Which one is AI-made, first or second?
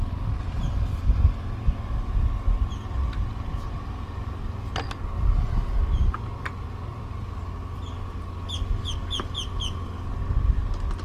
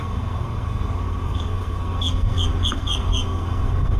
second